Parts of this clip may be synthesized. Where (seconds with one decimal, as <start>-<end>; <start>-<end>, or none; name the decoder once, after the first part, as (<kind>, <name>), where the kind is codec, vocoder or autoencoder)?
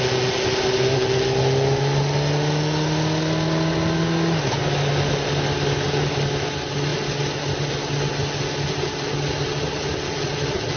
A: none